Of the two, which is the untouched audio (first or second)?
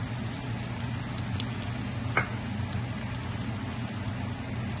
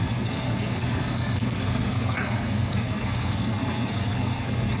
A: first